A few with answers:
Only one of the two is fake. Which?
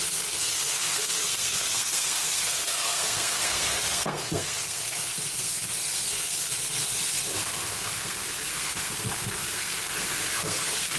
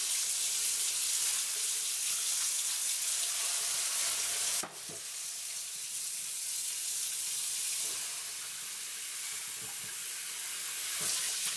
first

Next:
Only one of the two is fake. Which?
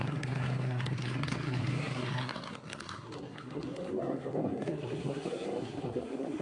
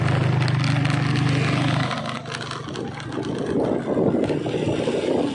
first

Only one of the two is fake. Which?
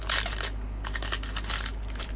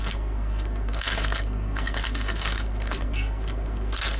second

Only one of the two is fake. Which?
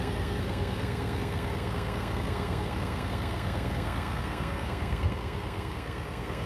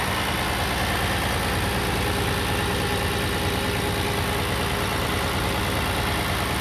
first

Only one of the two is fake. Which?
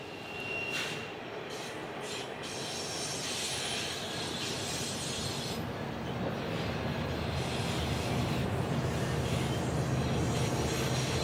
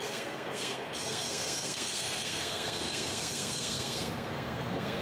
second